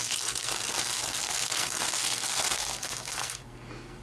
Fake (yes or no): yes